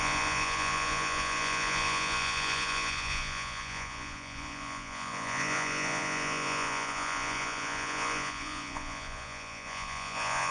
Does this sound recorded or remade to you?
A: remade